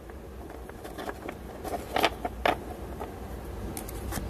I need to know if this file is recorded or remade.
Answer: recorded